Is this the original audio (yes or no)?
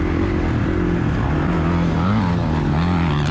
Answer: yes